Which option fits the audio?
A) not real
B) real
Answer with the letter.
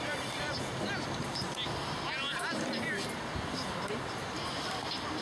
B